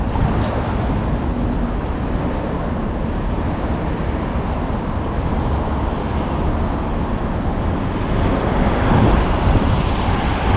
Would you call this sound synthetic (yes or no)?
no